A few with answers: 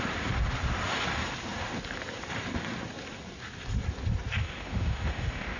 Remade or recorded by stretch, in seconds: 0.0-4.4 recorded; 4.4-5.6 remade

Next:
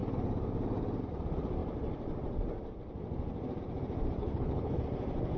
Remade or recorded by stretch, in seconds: 0.0-4.2 recorded; 4.2-4.8 remade; 4.8-5.4 recorded

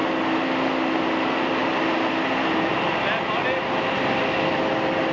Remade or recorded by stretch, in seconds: 0.0-5.1 recorded